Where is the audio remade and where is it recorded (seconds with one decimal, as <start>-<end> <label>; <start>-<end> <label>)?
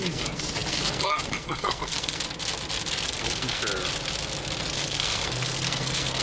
0.0-2.2 remade; 2.2-2.9 recorded; 2.9-3.6 remade; 3.6-4.6 recorded; 4.6-6.2 remade